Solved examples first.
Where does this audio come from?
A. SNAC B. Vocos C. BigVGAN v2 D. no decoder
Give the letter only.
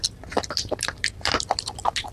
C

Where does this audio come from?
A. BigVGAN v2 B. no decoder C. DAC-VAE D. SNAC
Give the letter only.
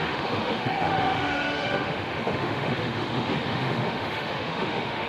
C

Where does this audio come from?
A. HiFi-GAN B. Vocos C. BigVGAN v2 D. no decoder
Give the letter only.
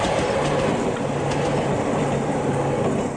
D